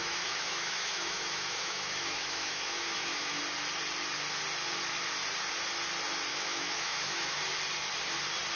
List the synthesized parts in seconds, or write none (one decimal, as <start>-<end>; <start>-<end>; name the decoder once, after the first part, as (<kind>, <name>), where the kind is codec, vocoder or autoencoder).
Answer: 0.0-3.4 (autoencoder, DAC-VAE); 6.3-7.4